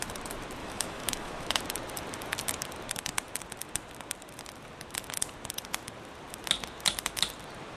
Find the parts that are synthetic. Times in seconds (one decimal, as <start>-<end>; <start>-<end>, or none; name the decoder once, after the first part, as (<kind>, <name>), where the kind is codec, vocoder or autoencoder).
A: 0.6-1.6 (autoencoder, DAC-VAE)